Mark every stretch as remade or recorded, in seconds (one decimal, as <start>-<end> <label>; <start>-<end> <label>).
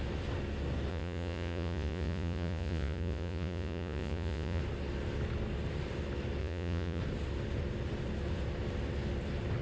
0.0-0.9 recorded; 0.9-4.6 remade; 4.6-6.4 recorded; 6.4-7.0 remade; 7.0-9.6 recorded